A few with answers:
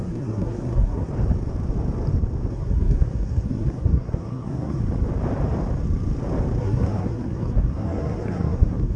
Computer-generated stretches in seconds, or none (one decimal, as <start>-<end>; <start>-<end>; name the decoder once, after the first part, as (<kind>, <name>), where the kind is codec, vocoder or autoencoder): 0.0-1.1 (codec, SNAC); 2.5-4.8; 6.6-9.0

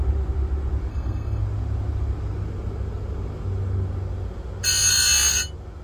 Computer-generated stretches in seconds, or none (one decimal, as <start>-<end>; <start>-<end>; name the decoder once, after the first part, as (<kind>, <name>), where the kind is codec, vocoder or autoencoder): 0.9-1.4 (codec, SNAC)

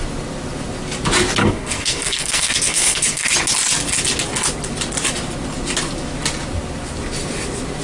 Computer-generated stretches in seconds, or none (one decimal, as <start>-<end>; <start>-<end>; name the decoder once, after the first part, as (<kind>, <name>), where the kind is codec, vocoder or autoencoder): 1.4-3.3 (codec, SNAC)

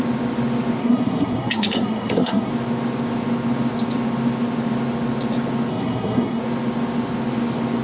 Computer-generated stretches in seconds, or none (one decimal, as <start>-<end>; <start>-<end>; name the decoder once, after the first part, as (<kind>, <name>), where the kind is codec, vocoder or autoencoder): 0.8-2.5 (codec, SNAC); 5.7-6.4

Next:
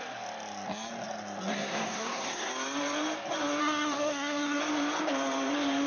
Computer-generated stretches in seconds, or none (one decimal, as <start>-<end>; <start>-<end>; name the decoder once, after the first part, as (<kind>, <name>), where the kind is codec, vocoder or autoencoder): 1.5-2.5 (codec, SNAC); 3.6-4.6

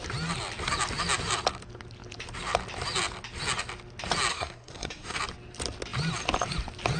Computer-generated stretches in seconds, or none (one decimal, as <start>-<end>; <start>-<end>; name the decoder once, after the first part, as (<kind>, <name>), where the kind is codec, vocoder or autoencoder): 4.3-5.2 (codec, SNAC)

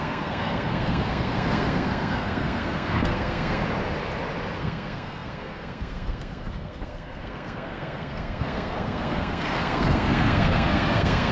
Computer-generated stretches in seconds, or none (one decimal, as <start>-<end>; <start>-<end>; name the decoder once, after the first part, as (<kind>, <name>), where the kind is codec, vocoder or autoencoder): 0.0-3.6 (codec, SNAC); 4.6-11.3